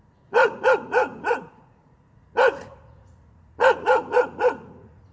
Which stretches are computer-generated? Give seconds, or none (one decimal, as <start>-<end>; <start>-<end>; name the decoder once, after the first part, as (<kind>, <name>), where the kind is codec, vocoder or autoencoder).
0.0-5.1 (vocoder, Vocos)